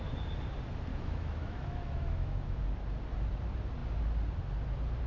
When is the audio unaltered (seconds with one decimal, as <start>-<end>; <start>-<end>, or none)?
0.0-0.9; 2.6-5.1